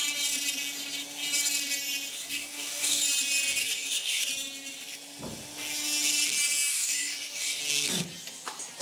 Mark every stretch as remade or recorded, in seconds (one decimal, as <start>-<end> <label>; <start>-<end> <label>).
0.0-2.1 recorded; 2.1-3.0 remade; 3.0-3.6 recorded; 3.6-4.3 remade; 4.3-6.7 recorded; 6.7-7.6 remade; 7.6-8.8 recorded